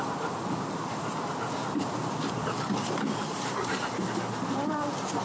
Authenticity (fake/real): real